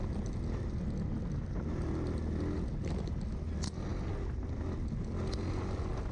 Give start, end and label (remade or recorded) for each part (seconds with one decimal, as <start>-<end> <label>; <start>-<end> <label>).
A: 0.0-6.1 recorded